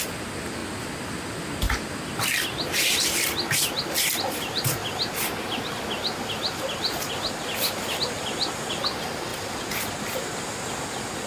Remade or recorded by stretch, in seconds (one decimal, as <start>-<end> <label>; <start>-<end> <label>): 0.0-11.3 recorded